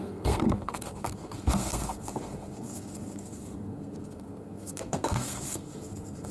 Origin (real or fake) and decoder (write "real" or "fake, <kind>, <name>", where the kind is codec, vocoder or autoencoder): fake, codec, SNAC